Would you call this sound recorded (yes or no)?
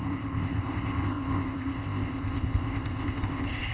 no